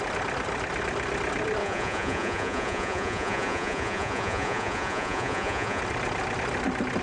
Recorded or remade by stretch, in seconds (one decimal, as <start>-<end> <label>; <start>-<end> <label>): 0.0-1.6 recorded; 1.6-5.8 remade; 5.8-7.0 recorded